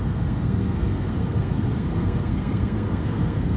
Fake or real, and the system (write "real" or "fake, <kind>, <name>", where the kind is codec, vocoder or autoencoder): fake, codec, SNAC